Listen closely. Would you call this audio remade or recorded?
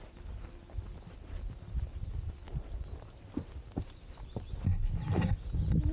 recorded